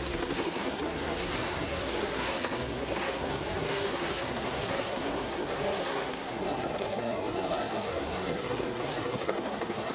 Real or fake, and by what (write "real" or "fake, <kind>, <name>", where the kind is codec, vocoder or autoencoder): fake, codec, SNAC